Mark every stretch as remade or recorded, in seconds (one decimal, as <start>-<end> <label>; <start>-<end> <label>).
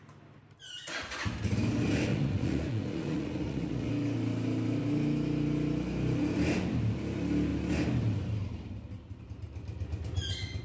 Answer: 0.0-2.1 recorded; 2.1-3.9 remade; 3.9-10.6 recorded